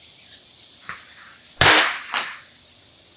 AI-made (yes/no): no